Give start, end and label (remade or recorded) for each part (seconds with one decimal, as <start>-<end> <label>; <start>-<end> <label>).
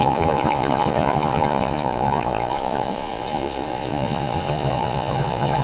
0.0-5.6 remade